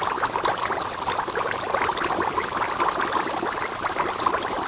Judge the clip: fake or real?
real